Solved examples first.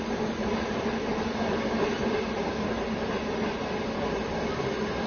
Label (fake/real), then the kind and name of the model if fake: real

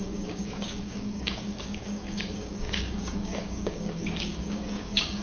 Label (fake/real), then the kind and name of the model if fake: fake, codec, DAC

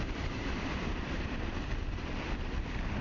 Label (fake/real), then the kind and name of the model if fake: fake, vocoder, BigVGAN v2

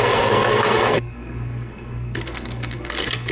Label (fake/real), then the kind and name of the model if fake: fake, codec, SNAC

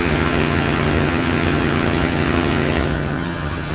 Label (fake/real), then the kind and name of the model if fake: fake, vocoder, HiFi-GAN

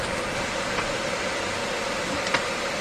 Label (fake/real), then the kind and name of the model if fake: real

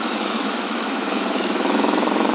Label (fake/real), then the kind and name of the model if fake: fake, autoencoder, DAC-VAE